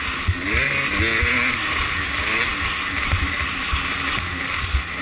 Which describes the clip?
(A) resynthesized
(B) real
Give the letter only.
B